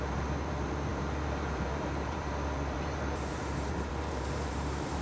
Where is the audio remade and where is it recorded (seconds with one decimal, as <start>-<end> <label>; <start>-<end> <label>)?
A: 0.0-5.0 remade